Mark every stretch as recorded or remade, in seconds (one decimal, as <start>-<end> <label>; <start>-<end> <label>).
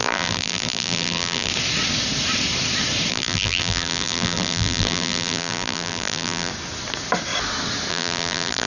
0.0-1.5 remade; 1.5-3.1 recorded; 3.1-6.5 remade; 6.5-7.9 recorded; 7.9-8.7 remade